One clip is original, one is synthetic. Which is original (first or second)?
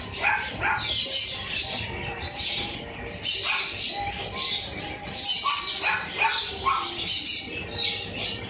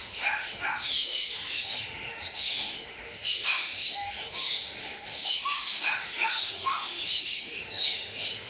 first